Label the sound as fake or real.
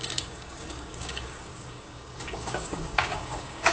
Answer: fake